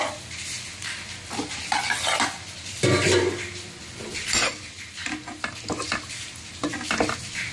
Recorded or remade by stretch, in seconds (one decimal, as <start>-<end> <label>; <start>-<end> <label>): 0.0-7.5 recorded

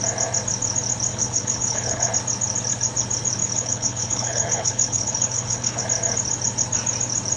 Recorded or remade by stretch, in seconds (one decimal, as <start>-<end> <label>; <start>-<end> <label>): 0.0-1.1 recorded; 1.1-2.1 remade; 2.1-3.4 recorded; 3.4-5.8 remade; 5.8-7.4 recorded